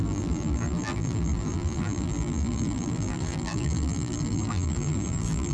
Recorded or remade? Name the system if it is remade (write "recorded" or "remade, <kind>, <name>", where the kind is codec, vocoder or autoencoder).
remade, vocoder, BigVGAN v2